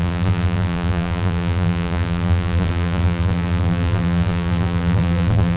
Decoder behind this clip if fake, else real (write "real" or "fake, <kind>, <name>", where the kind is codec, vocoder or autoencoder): fake, vocoder, BigVGAN v2